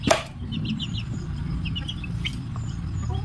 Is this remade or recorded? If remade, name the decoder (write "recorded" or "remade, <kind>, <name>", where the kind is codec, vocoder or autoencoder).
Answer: remade, vocoder, BigVGAN v2